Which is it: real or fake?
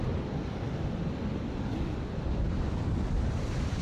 real